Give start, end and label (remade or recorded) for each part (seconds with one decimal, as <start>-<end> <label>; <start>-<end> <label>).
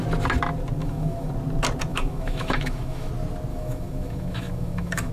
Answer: 0.0-0.8 recorded; 0.8-1.3 remade; 1.3-1.9 recorded; 1.9-3.1 remade; 3.1-3.5 recorded; 3.5-5.1 remade